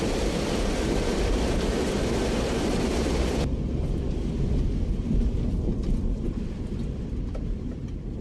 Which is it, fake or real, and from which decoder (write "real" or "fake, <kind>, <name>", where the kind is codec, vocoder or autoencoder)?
fake, vocoder, BigVGAN v2